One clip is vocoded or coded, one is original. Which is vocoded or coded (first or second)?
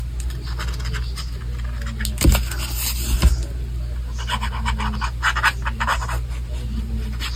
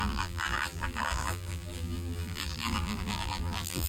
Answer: second